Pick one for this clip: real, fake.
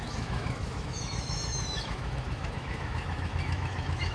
fake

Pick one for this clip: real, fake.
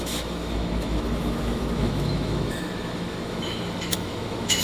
fake